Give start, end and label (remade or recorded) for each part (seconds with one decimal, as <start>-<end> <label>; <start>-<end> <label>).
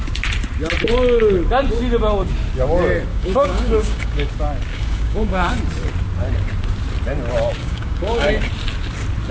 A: 0.0-3.1 recorded; 3.1-4.3 remade; 4.3-4.7 recorded; 4.7-5.5 remade; 5.5-7.6 recorded; 7.6-8.3 remade; 8.3-9.3 recorded